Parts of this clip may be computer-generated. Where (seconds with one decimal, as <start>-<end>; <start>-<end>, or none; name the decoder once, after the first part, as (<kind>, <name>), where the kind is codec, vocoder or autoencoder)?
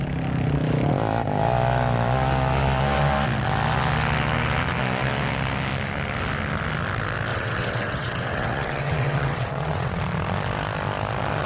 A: 7.3-10.0 (vocoder, WaveNeXt)